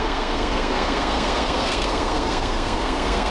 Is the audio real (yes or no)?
no